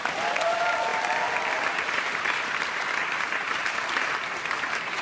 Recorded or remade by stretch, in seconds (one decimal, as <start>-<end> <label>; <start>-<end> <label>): 0.0-5.0 recorded